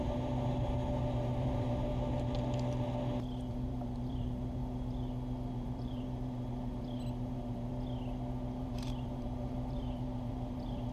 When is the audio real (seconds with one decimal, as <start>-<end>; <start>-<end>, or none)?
1.9-3.5; 4.6-5.5; 7.7-8.6